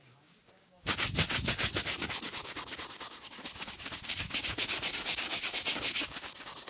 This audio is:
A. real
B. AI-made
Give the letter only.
B